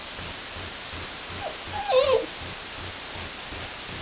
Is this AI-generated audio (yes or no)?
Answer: no